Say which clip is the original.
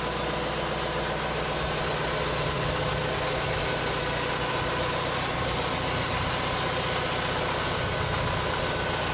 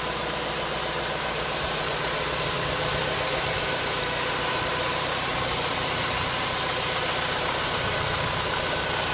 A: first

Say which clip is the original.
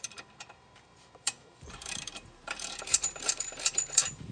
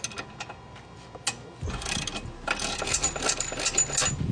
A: second